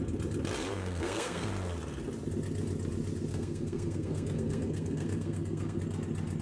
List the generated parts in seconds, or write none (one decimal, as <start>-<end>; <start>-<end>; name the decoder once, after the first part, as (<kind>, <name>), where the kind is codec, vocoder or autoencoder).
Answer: 0.7-1.5 (codec, SNAC); 3.3-5.8